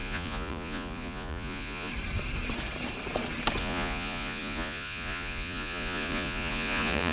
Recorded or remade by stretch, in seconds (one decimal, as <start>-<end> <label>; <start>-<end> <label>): 0.0-1.9 remade; 1.9-3.6 recorded; 3.6-7.1 remade